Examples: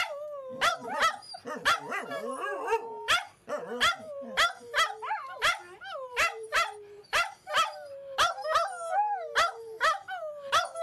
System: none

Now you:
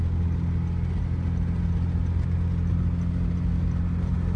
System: none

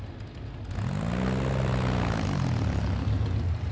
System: none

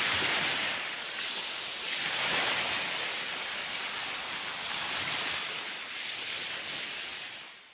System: none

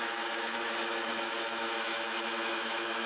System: autoencoder, DAC-VAE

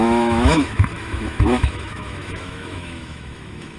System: autoencoder, DAC-VAE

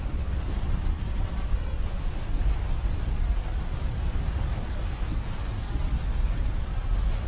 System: none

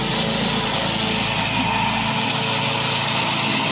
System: none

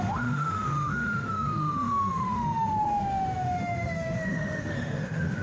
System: autoencoder, DAC-VAE